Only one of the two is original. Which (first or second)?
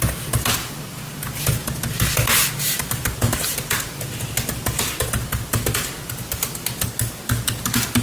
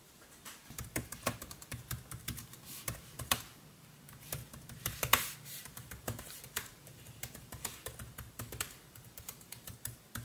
first